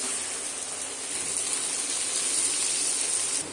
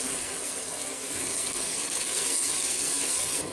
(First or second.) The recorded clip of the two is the first